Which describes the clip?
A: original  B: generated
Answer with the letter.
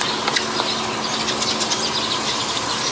A